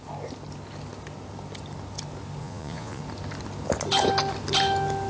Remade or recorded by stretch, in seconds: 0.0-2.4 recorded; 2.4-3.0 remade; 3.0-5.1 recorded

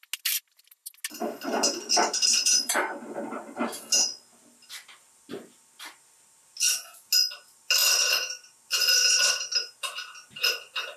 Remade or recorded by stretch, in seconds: 0.0-11.0 recorded

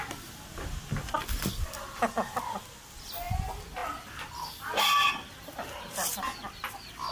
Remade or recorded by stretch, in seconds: 0.0-7.1 recorded

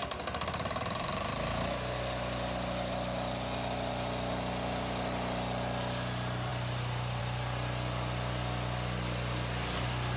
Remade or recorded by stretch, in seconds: 0.0-10.2 recorded